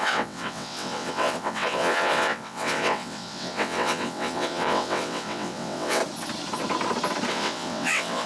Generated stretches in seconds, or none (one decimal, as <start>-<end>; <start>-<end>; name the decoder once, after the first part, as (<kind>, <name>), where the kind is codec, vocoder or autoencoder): 0.0-6.0 (vocoder, WaveNeXt); 7.3-8.3